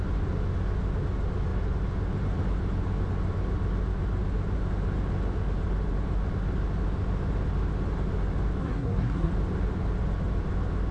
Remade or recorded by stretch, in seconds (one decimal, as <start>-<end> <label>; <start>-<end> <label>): 0.0-8.6 recorded; 8.6-9.3 remade; 9.3-10.9 recorded

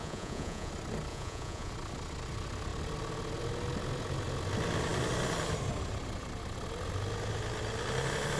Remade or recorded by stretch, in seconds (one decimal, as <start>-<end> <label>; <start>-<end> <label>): 0.0-0.7 remade; 0.7-1.1 recorded; 1.1-1.7 remade; 1.7-8.4 recorded

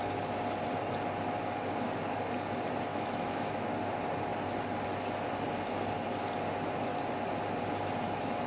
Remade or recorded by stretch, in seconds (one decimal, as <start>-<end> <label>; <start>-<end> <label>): 0.0-2.9 recorded; 2.9-3.7 remade; 3.7-8.5 recorded

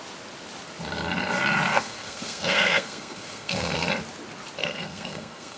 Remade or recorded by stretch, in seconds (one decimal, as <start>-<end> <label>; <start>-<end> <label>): 0.0-1.7 recorded; 1.7-3.9 remade; 3.9-4.6 recorded; 4.6-5.6 remade